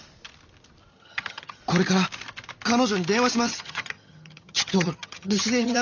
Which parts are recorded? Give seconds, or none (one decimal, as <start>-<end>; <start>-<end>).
0.0-0.9; 1.6-3.5